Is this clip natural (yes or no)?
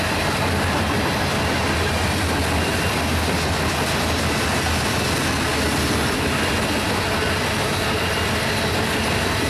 yes